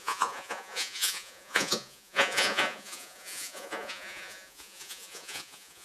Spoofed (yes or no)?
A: yes